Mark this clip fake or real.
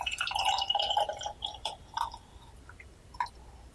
fake